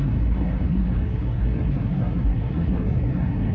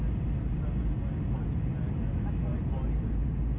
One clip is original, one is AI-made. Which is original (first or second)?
second